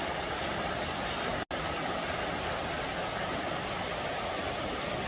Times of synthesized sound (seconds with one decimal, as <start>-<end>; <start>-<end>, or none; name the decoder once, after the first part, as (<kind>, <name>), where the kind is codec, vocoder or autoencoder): none